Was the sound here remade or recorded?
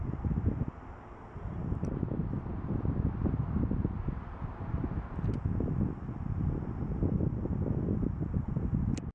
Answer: recorded